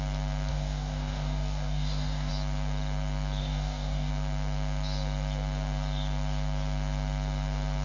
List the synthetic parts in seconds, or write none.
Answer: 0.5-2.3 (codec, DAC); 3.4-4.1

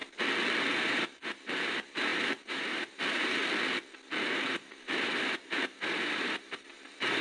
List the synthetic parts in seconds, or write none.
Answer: 0.7-3.4 (vocoder, BigVGAN v2); 4.2-7.2

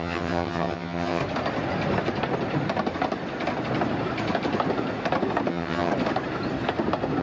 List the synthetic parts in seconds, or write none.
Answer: 0.0-1.2 (vocoder, HiFi-GAN); 5.5-5.9

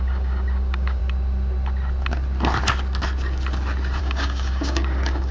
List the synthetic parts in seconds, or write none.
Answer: 0.0-1.0 (codec, DAC); 4.0-5.3

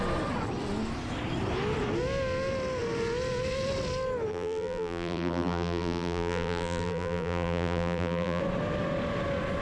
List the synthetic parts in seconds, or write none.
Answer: 4.3-8.4 (vocoder, BigVGAN v2)